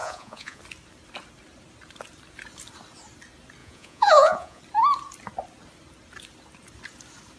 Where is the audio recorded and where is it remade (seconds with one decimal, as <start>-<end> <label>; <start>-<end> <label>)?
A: 0.0-0.6 remade; 0.6-3.6 recorded; 3.6-4.6 remade; 4.6-7.4 recorded